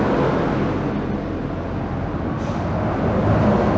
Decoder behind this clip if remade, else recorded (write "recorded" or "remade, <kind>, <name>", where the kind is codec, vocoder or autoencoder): recorded